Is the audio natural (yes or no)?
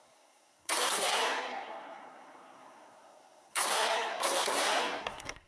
no